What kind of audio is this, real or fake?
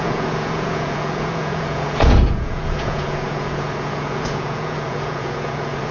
fake